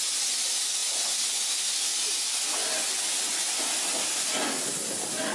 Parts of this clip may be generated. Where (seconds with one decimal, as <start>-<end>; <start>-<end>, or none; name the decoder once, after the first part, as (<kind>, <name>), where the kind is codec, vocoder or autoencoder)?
none